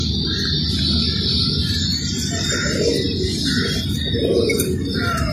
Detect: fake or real real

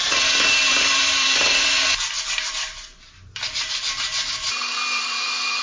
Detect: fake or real fake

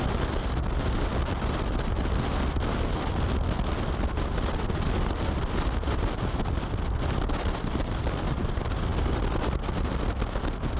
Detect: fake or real real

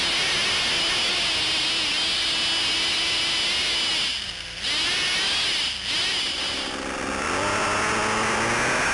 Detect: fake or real real